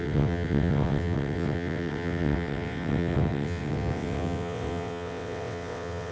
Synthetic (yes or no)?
yes